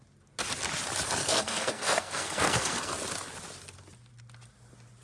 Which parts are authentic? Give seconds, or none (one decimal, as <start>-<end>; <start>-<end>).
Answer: 0.0-1.2; 2.9-5.0